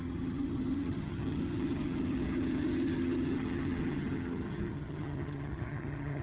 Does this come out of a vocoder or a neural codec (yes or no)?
yes